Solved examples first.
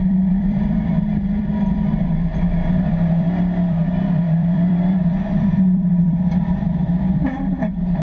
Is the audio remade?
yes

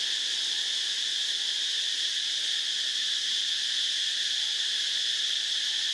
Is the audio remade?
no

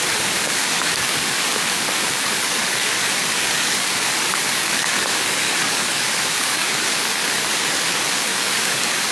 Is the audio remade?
yes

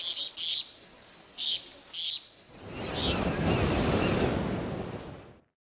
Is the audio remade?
no